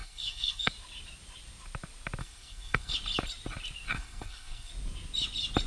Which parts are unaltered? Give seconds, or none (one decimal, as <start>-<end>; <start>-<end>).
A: 0.7-2.2; 2.9-3.9; 4.7-5.7

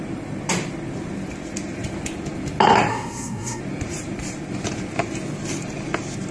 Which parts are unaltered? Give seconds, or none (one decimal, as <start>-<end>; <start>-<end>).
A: 0.0-2.9; 3.6-6.3